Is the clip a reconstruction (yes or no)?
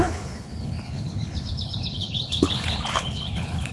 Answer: yes